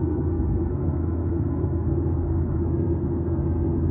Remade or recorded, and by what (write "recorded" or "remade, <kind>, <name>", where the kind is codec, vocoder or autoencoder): remade, codec, SNAC